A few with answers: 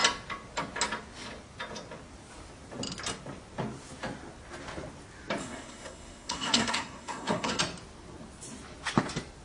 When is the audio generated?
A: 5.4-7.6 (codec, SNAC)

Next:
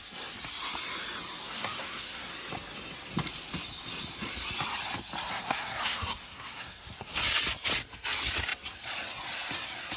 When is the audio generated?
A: 1.4-2.3 (codec, SNAC); 5.3-7.2